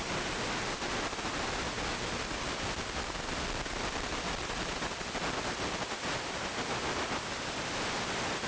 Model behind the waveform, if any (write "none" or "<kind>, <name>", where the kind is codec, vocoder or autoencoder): none